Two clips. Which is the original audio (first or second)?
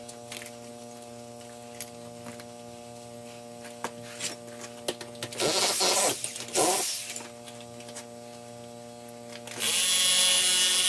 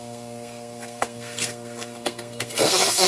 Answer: first